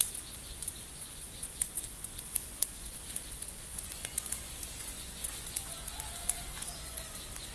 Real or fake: fake